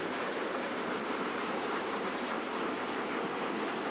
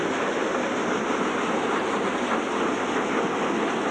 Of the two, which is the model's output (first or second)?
first